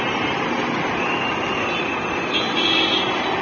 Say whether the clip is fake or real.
real